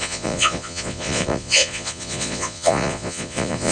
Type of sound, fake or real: fake